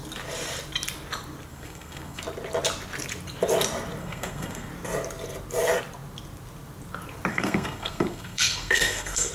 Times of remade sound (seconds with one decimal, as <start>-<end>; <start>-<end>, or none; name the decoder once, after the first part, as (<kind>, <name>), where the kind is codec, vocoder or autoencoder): 1.5-2.2 (codec, SNAC); 4.0-4.7; 7.3-9.3